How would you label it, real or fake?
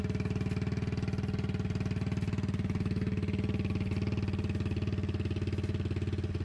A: real